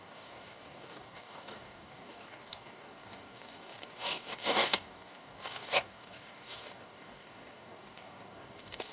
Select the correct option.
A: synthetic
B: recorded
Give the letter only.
A